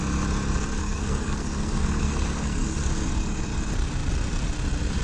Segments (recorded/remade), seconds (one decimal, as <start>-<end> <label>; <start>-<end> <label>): 0.0-0.8 recorded; 0.8-2.9 remade; 2.9-5.0 recorded